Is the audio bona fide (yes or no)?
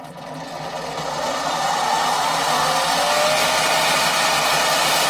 yes